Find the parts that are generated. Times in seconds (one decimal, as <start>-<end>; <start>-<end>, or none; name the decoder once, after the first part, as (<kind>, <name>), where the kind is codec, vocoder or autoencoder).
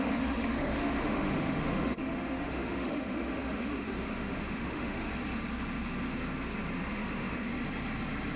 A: 0.0-5.1 (autoencoder, DAC-VAE); 6.9-7.5